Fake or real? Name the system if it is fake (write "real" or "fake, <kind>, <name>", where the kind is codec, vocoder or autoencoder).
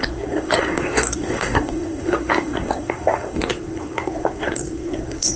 fake, codec, SNAC